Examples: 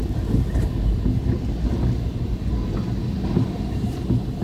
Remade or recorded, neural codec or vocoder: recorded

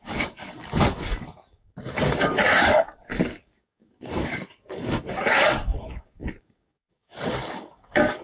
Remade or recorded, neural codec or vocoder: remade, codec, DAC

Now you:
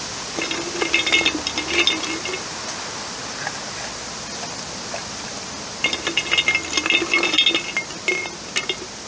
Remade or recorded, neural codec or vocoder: recorded